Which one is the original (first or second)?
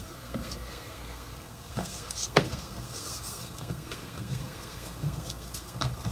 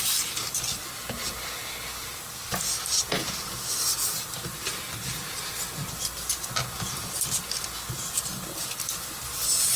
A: second